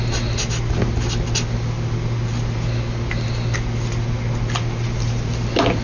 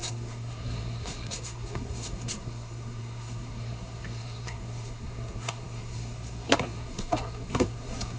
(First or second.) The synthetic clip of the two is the second